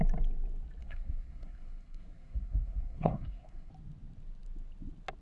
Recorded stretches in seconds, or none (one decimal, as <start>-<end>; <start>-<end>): 0.0-0.8; 3.7-5.2